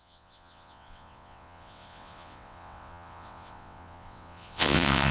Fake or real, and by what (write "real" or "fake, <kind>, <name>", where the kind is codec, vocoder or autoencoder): fake, vocoder, WaveNeXt